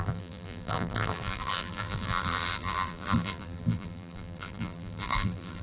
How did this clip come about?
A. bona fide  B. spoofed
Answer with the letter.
B